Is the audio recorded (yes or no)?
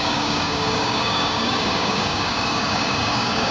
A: no